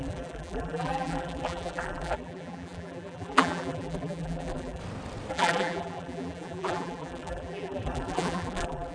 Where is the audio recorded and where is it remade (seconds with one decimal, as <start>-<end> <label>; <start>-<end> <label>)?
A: 0.0-4.8 remade; 4.8-5.3 recorded; 5.3-8.9 remade